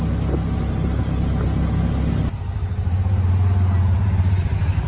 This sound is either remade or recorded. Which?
recorded